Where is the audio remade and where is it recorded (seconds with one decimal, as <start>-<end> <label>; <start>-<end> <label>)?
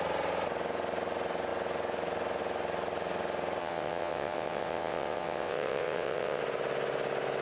0.0-3.6 recorded; 3.6-6.4 remade; 6.4-7.4 recorded